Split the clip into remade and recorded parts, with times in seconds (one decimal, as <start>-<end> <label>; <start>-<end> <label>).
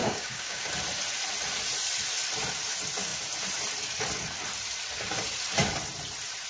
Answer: 0.0-0.7 remade; 0.7-6.5 recorded